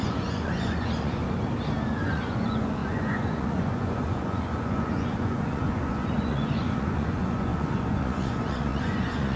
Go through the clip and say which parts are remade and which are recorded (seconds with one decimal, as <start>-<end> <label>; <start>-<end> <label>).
0.0-1.2 remade; 1.2-1.9 recorded; 1.9-9.4 remade